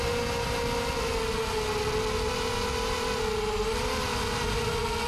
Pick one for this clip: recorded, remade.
recorded